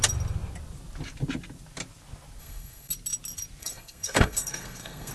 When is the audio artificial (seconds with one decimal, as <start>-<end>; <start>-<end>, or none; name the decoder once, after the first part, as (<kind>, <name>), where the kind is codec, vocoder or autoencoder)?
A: 2.4-2.9 (codec, SNAC); 3.6-5.1